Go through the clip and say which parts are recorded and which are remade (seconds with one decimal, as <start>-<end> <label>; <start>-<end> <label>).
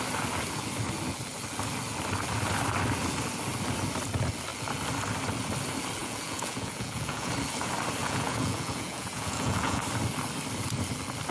0.0-6.0 recorded; 6.0-7.3 remade; 7.3-8.0 recorded; 8.0-9.8 remade; 9.8-11.3 recorded